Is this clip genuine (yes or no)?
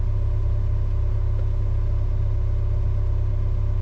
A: yes